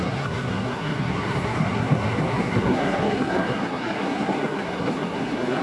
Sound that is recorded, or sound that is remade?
remade